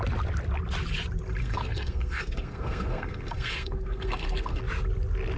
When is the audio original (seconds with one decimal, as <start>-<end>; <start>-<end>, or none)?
0.0-1.4; 4.6-5.4